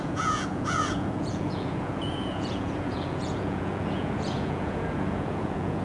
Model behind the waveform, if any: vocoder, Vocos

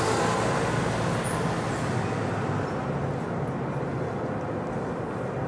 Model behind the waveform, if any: none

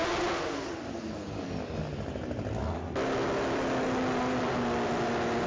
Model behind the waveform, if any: none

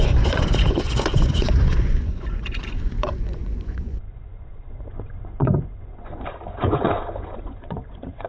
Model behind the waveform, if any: vocoder, Vocos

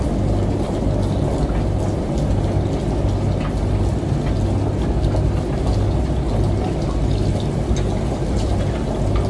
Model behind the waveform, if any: none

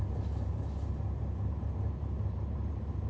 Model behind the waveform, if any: none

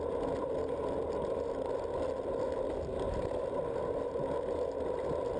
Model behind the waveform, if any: none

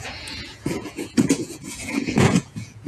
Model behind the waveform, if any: vocoder, Vocos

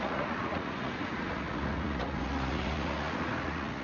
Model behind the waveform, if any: vocoder, Vocos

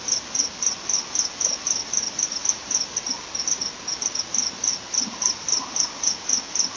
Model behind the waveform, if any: none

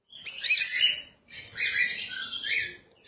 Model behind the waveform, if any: none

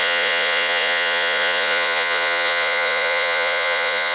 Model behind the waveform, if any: vocoder, Vocos